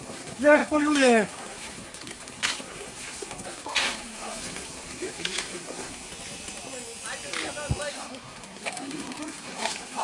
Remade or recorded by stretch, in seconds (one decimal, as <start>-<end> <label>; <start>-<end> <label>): 0.0-6.1 remade; 6.1-7.9 recorded; 7.9-10.0 remade